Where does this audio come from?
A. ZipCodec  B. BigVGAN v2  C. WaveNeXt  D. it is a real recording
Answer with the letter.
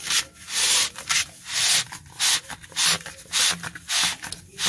D